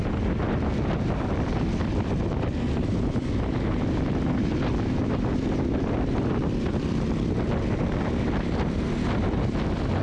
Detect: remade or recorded recorded